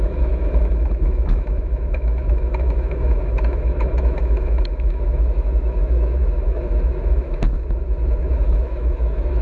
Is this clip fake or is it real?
fake